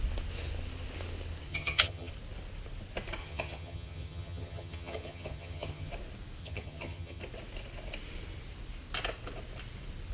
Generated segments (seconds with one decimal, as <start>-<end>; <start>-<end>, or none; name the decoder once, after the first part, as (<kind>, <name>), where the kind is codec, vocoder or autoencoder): 1.5-2.1 (vocoder, HiFi-GAN); 3.2-5.9; 6.4-7.2